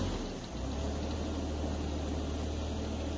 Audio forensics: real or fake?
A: real